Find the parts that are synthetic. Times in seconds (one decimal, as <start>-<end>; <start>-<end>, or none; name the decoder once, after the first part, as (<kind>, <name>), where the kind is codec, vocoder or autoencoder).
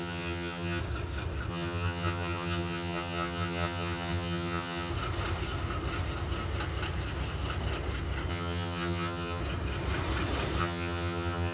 0.0-0.8 (vocoder, HiFi-GAN); 1.5-4.9; 8.3-9.4; 10.6-11.5